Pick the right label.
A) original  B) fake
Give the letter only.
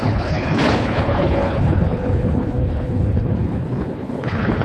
B